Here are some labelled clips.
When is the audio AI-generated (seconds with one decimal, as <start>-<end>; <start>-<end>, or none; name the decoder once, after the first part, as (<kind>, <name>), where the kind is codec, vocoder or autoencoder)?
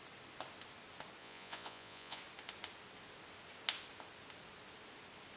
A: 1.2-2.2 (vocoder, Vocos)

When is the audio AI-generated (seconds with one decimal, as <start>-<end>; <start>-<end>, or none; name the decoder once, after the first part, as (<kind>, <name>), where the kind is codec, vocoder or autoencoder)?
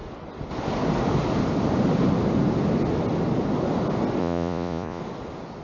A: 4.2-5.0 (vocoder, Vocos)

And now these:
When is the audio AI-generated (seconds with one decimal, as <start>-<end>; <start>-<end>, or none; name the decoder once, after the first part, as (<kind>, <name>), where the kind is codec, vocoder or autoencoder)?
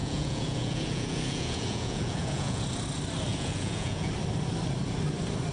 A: 0.0-2.6 (vocoder, Vocos); 3.3-4.1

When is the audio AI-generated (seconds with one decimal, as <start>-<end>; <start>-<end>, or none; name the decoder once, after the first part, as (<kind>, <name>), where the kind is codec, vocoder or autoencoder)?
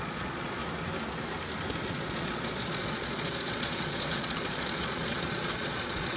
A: 0.0-0.6 (vocoder, Vocos); 1.9-6.2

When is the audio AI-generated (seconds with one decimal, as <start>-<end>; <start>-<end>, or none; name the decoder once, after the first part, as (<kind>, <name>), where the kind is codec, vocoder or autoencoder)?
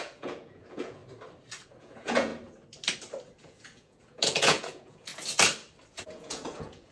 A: 0.0-1.0 (vocoder, Vocos); 1.8-2.3; 3.4-5.1; 5.9-6.9